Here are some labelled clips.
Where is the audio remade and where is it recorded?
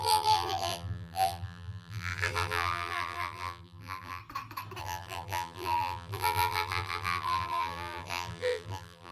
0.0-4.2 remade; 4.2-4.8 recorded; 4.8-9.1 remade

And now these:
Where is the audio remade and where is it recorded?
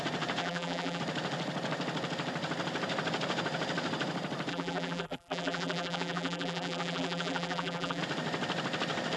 0.0-0.4 recorded; 0.4-1.0 remade; 1.0-4.5 recorded; 4.5-8.0 remade; 8.0-9.2 recorded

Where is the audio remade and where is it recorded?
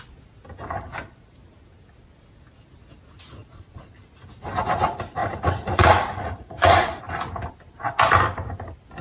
0.0-5.2 recorded; 5.2-7.0 remade; 7.0-9.0 recorded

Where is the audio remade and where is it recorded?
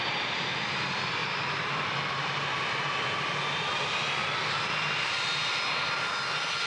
0.0-1.2 recorded; 1.2-2.8 remade; 2.8-6.7 recorded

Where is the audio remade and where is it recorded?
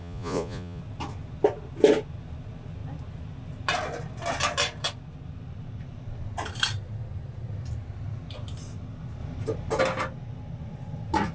0.0-0.8 remade; 0.8-11.3 recorded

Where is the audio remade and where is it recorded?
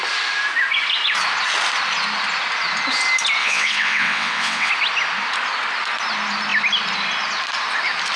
0.0-3.4 recorded; 3.4-4.7 remade; 4.7-8.2 recorded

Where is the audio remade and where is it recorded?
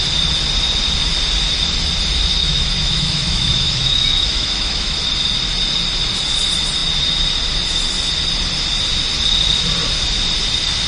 0.0-2.4 recorded; 2.4-5.0 remade; 5.0-10.9 recorded